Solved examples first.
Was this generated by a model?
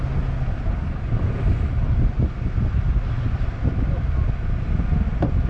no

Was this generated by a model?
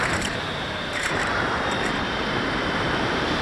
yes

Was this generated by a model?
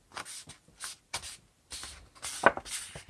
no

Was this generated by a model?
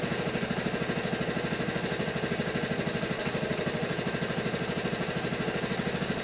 no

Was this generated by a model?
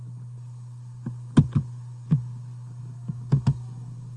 no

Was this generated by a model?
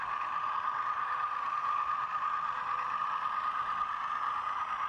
no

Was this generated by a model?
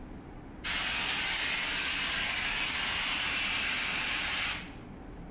no